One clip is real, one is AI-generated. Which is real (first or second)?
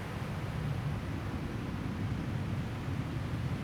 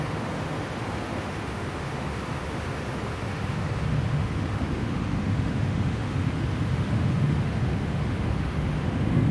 first